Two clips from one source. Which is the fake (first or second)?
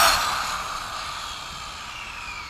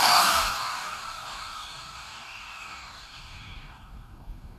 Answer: second